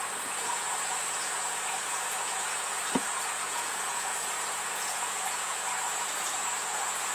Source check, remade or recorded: remade